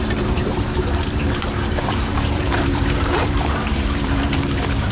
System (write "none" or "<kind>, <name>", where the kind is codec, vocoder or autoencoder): vocoder, BigVGAN v2